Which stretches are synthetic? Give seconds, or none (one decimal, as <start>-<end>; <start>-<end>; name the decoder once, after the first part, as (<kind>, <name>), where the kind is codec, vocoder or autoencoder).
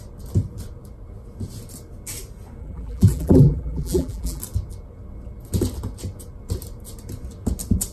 2.6-4.4 (vocoder, BigVGAN v2)